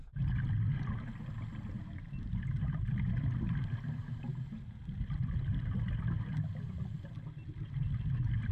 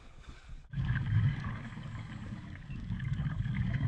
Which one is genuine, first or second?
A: first